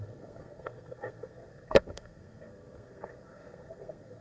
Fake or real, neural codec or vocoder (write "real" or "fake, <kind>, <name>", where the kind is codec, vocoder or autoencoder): fake, codec, SNAC